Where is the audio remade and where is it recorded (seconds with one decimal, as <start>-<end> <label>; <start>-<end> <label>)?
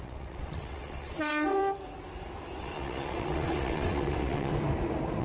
0.0-1.6 remade; 1.6-2.6 recorded; 2.6-4.5 remade; 4.5-5.2 recorded